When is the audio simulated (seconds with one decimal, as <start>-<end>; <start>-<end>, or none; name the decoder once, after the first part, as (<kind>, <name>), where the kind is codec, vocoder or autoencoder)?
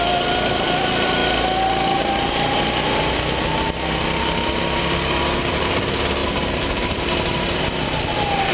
none